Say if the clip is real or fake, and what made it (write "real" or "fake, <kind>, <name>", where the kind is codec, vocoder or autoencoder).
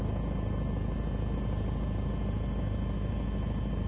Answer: real